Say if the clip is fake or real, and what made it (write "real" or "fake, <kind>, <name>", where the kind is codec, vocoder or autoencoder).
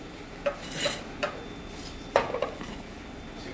real